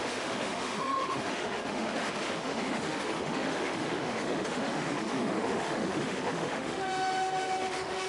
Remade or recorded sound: remade